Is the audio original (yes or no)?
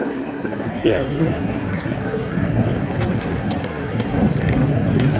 no